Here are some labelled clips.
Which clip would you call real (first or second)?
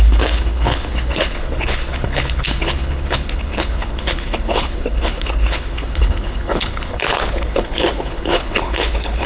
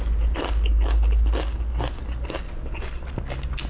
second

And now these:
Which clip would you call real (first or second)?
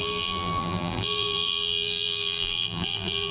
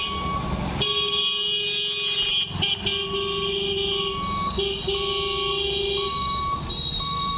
second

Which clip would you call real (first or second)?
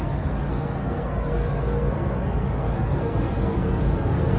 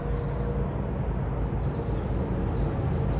second